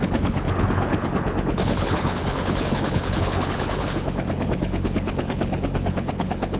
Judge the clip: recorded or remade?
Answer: remade